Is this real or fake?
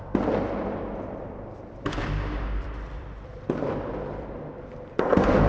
fake